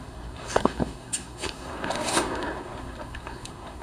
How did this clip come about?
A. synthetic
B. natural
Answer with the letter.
A